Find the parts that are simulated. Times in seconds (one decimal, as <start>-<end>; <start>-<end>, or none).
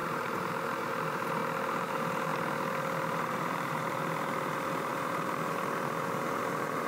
0.0-1.4; 1.9-2.3; 3.1-6.9